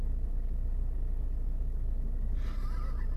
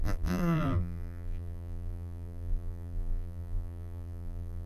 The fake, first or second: second